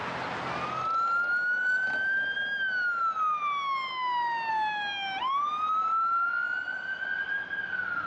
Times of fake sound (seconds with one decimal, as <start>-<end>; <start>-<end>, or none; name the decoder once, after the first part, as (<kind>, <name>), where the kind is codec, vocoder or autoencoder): none